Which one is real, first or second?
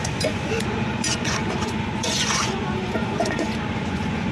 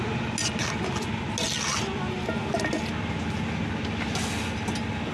second